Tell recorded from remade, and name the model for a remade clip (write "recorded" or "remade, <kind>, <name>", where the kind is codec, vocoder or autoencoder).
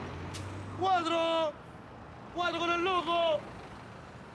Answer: recorded